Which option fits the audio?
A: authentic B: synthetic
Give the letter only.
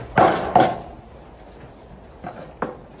A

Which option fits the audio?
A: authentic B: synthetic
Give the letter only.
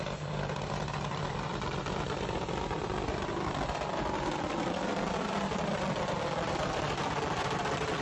B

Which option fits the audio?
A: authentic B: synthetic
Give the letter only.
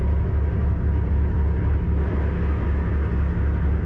A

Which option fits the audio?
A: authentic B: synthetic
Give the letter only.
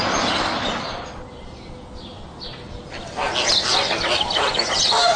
A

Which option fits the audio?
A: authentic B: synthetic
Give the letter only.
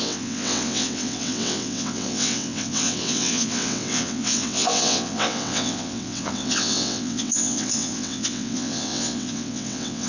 B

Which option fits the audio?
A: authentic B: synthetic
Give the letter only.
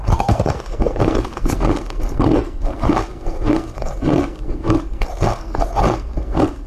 B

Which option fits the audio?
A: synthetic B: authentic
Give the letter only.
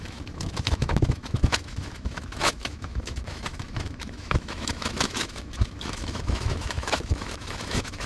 A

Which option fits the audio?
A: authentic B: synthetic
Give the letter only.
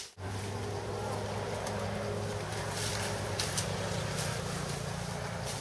A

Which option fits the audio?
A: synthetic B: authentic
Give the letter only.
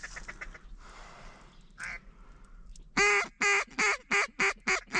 B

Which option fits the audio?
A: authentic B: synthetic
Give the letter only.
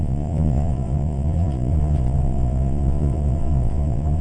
B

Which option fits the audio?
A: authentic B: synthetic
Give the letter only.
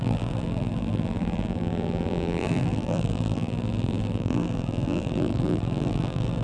B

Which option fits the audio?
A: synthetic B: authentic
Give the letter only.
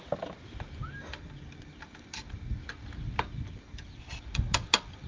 B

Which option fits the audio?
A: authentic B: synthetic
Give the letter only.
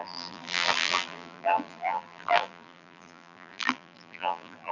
B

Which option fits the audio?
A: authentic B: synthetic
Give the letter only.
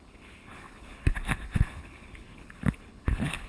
B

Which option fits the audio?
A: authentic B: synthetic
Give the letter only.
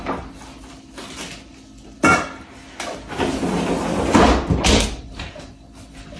A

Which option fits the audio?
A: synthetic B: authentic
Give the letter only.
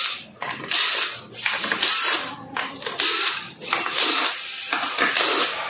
A